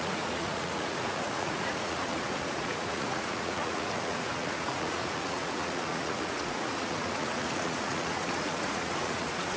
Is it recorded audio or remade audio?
remade